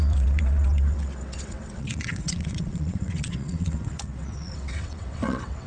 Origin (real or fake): fake